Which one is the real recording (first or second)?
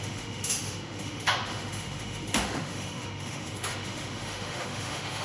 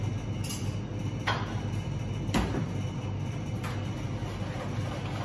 second